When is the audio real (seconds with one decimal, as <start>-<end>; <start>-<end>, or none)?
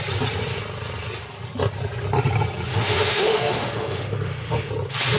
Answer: 0.0-2.7; 4.7-5.2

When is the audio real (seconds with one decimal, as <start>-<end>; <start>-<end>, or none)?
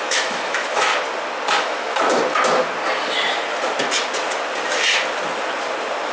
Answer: 0.9-1.6; 2.2-6.1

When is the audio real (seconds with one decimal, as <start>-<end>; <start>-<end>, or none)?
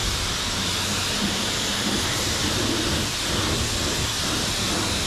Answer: 0.0-5.1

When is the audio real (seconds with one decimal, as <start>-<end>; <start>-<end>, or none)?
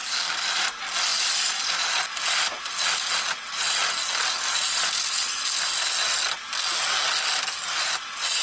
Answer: 0.0-8.4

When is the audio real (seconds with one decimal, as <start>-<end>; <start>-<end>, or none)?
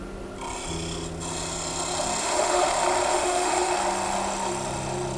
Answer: 0.0-2.2; 2.7-3.1; 3.7-5.2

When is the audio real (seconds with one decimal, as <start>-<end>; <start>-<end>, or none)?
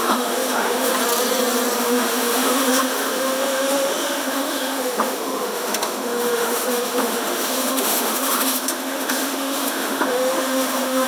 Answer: 0.9-1.8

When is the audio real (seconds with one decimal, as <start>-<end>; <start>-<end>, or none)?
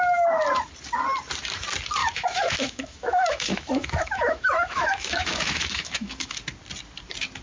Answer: 0.0-2.0; 6.4-7.4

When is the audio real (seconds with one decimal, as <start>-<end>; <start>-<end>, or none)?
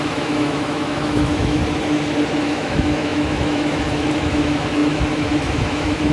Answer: 1.6-2.4